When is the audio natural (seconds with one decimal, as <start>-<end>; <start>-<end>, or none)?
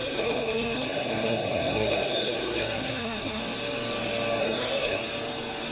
3.4-4.4; 5.0-5.7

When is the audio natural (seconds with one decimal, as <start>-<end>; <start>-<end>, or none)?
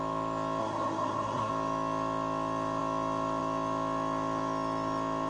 0.0-0.6; 1.5-5.3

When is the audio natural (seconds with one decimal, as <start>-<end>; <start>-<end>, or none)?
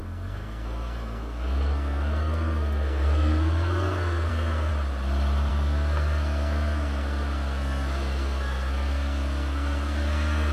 4.7-5.5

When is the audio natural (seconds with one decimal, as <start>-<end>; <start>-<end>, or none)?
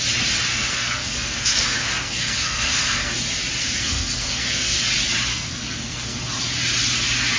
0.0-0.5; 3.2-3.6; 4.8-5.3; 6.2-7.4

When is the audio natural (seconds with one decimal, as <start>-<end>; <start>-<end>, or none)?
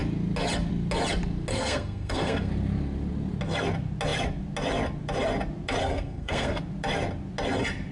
0.0-1.5; 2.5-5.8; 6.6-7.9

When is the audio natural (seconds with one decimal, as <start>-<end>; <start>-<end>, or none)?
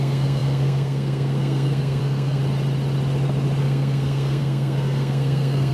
2.4-3.6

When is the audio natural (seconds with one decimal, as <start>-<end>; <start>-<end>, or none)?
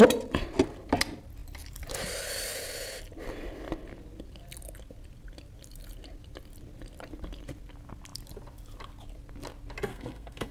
0.0-9.9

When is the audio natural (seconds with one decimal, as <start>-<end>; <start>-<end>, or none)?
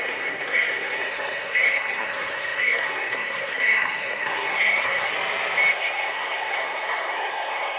5.1-5.7